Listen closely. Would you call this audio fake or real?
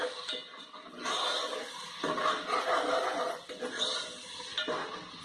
real